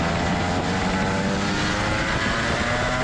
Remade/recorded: recorded